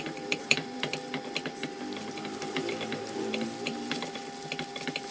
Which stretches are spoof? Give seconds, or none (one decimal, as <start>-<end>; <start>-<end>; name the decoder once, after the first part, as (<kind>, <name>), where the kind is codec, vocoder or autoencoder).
0.0-0.9 (vocoder, BigVGAN v2); 3.3-4.2